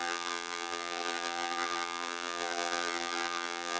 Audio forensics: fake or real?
fake